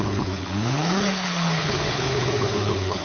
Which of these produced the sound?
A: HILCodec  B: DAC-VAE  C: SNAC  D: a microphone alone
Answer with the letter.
A